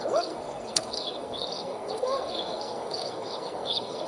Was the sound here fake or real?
fake